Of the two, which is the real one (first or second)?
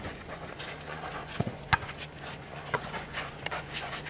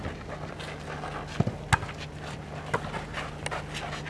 second